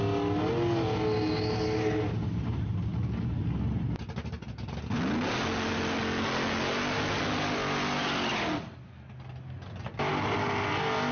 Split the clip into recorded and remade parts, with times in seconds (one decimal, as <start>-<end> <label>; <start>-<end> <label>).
0.0-11.1 recorded